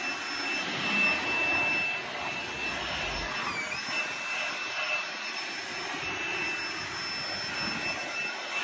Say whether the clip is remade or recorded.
recorded